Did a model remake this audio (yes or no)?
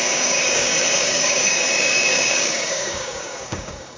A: yes